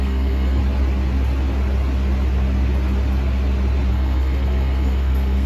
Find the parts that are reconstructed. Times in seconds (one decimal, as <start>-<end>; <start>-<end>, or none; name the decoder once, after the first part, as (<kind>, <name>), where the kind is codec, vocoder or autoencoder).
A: 0.0-0.6 (codec, SNAC); 3.9-5.5